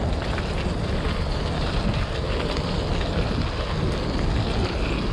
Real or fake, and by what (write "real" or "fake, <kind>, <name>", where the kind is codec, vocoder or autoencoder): real